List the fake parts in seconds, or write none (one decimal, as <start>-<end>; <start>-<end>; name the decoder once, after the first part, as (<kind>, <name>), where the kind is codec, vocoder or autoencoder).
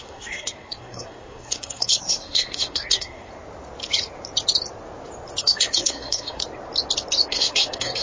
0.0-3.3 (codec, SNAC); 5.4-6.4; 7.3-8.0